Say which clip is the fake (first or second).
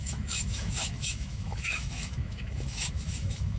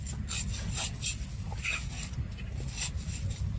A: first